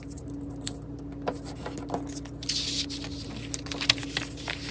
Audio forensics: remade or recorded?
recorded